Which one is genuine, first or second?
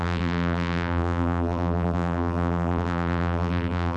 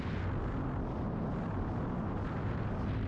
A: second